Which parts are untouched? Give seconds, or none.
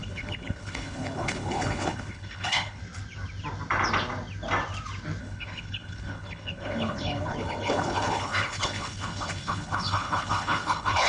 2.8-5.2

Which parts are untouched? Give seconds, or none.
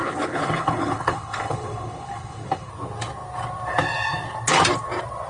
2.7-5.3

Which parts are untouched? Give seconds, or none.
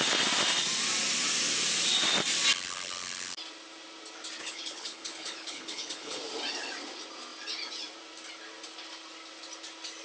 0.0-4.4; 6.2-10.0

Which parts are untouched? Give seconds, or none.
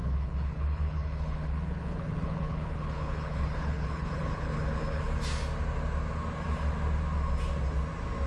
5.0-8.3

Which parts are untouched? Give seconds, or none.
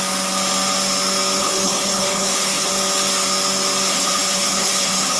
0.0-1.4; 2.7-3.9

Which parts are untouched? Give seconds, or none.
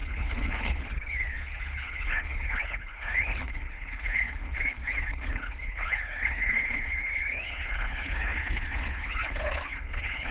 none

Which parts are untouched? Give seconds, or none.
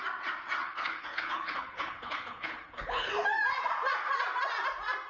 0.0-0.6; 3.1-5.1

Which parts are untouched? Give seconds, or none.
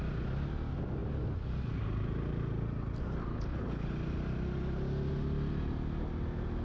0.0-3.3; 3.9-6.6